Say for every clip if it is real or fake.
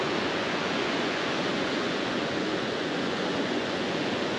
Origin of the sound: fake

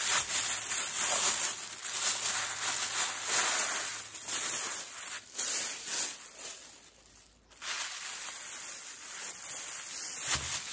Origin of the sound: real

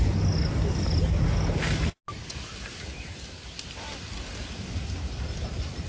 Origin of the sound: real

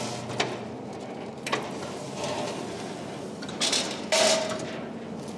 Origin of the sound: real